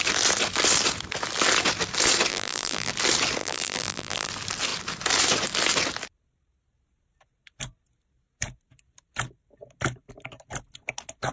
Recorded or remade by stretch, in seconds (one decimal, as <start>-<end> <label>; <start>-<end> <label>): 0.0-2.3 recorded; 2.3-2.9 remade; 2.9-3.4 recorded; 3.4-4.3 remade; 4.3-11.3 recorded